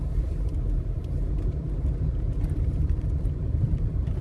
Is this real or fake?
fake